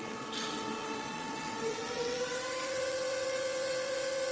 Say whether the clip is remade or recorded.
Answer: remade